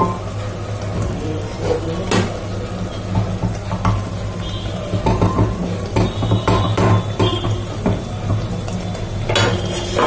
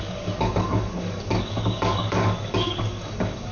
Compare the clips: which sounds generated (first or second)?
second